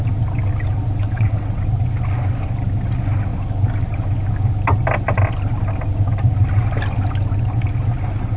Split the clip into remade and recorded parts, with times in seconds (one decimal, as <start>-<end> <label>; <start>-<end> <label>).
0.0-1.0 recorded; 1.0-1.6 remade; 1.6-8.4 recorded